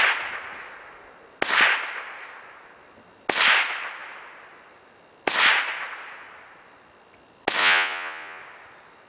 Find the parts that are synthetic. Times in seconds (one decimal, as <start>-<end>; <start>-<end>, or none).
7.6-8.4